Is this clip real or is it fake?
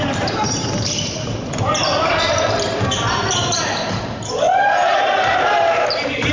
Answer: fake